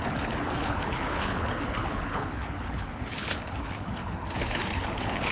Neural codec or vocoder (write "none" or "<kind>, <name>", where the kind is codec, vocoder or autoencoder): codec, HILCodec